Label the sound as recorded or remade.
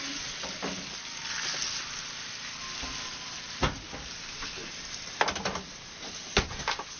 recorded